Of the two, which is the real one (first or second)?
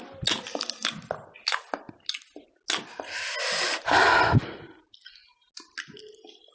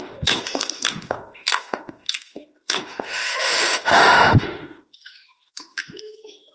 first